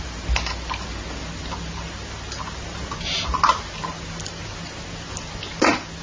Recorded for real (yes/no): yes